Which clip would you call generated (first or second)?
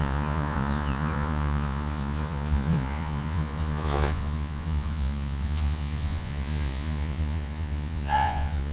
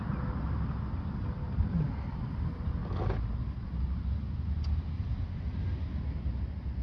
first